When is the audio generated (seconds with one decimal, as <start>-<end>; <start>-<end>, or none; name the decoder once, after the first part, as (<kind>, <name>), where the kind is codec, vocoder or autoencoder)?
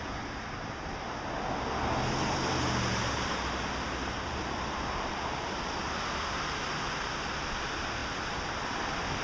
none